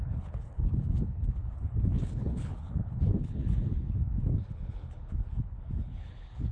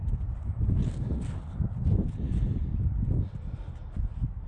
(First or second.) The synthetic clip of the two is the first